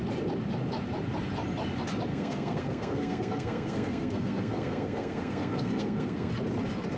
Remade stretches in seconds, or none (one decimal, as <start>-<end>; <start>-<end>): 2.1-6.3